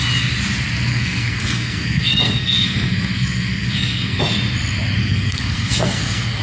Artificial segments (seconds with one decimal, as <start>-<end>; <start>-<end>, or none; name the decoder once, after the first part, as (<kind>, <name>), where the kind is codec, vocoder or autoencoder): 0.9-4.2 (codec, SNAC); 5.0-6.4